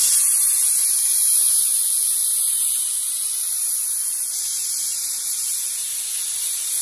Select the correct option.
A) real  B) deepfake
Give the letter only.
A